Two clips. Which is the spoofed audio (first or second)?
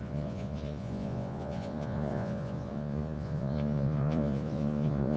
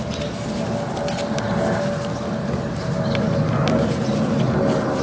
first